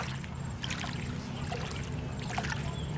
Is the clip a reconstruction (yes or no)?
no